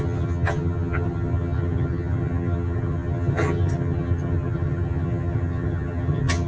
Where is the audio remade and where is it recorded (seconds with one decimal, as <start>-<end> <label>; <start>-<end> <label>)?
0.0-6.5 remade

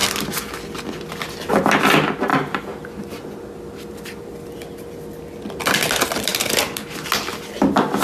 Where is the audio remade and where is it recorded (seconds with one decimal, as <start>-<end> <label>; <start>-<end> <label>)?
0.0-2.3 recorded; 2.3-3.0 remade; 3.0-8.0 recorded